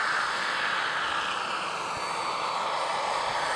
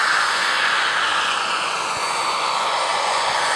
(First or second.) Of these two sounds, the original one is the first